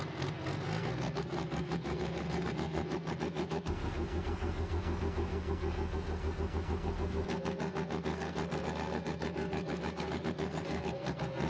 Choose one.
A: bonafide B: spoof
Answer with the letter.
B